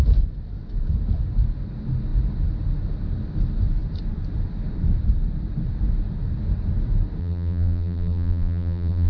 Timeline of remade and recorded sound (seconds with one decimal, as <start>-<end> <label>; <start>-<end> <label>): 0.0-7.2 recorded; 7.2-9.1 remade